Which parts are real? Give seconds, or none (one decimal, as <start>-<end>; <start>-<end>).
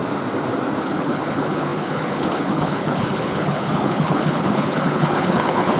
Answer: 0.0-0.8